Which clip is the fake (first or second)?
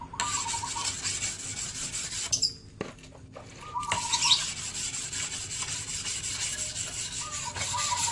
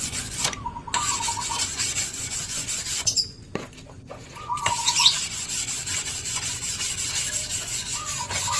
second